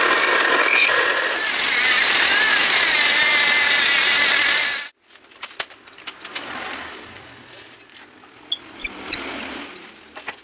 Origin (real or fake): real